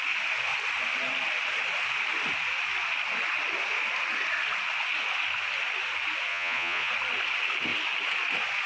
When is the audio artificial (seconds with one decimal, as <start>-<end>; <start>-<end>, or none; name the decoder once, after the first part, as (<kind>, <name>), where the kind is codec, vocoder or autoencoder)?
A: 6.3-6.9 (vocoder, Vocos)